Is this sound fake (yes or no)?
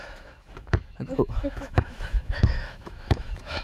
yes